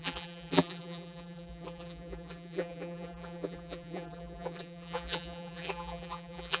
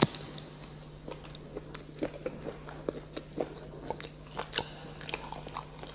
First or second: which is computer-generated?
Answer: first